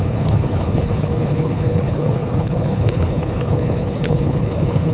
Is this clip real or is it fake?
fake